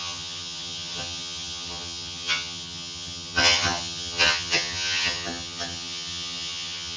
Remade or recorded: remade